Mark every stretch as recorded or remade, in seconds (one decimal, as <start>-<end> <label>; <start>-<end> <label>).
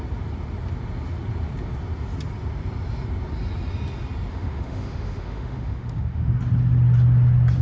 0.0-4.3 recorded; 4.3-6.4 remade; 6.4-7.6 recorded